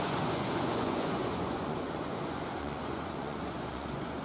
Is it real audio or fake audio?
fake